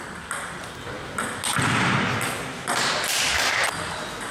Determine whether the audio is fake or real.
real